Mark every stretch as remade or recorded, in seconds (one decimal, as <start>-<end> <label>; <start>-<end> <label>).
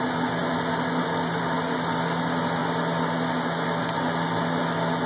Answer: 0.0-5.1 recorded